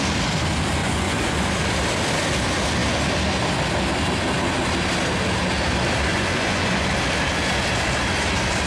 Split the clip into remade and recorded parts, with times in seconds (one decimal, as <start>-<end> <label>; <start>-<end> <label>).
0.0-0.8 recorded; 0.8-1.5 remade; 1.5-6.1 recorded; 6.1-6.9 remade; 6.9-8.7 recorded